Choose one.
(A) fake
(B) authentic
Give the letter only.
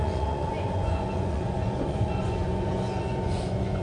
A